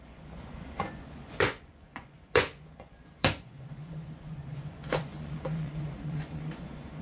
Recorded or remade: remade